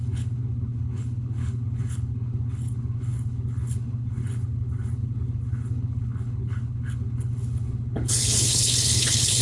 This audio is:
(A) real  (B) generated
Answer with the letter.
B